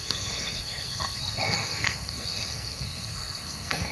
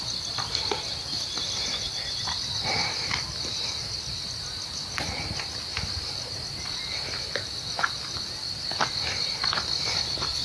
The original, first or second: second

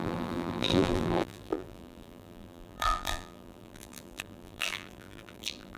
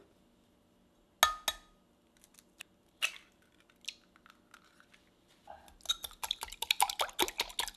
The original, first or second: second